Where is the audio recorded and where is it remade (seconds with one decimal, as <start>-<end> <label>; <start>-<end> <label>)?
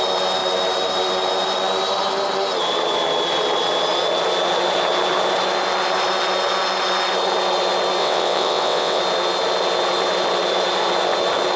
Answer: 0.0-8.0 recorded; 8.0-9.0 remade; 9.0-11.6 recorded